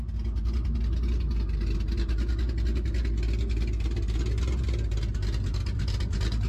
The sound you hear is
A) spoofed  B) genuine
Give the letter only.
B